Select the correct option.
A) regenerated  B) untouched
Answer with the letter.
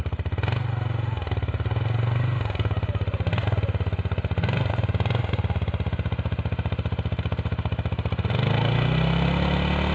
B